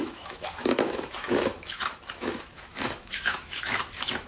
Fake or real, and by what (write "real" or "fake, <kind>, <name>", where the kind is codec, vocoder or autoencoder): fake, autoencoder, DAC-VAE